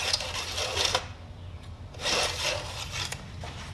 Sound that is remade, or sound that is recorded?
recorded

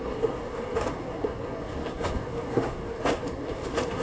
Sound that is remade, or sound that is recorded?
remade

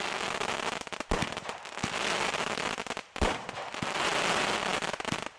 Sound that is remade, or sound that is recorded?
recorded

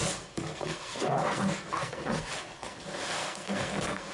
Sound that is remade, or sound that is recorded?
remade